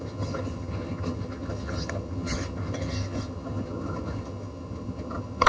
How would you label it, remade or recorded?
remade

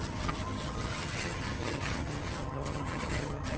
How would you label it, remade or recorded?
remade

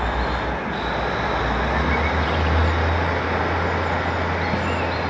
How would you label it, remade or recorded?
recorded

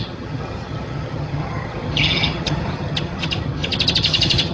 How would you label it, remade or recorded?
remade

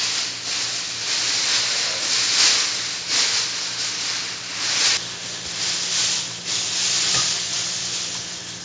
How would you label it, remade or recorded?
recorded